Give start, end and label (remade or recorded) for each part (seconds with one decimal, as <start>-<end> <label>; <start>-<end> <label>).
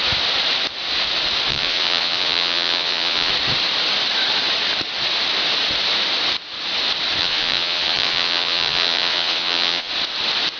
0.0-1.5 recorded; 1.5-3.3 remade; 3.3-7.2 recorded; 7.2-9.9 remade; 9.9-10.6 recorded